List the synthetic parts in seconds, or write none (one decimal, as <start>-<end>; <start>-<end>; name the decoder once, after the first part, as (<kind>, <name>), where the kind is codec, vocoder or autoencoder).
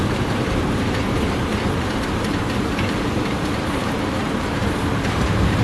0.0-5.6 (vocoder, BigVGAN v2)